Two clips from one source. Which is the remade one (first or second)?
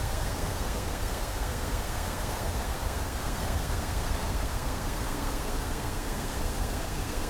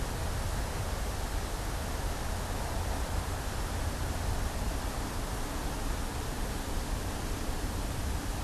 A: first